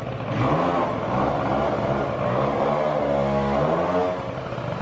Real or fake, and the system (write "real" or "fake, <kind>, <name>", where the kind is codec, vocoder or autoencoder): real